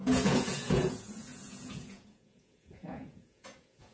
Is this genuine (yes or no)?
no